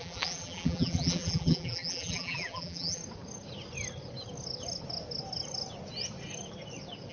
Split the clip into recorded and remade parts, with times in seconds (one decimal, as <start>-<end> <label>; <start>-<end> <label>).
0.0-3.0 remade; 3.0-7.1 recorded